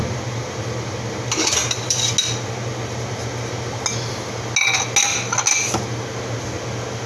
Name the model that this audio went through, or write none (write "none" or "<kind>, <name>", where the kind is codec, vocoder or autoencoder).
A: none